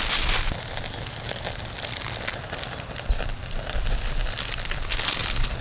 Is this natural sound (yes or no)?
yes